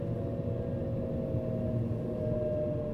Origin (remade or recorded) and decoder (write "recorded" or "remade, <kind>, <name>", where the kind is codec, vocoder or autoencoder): recorded